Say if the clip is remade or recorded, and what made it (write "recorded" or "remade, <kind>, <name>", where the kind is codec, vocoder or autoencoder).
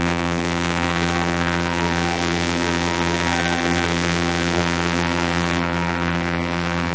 remade, vocoder, BigVGAN v2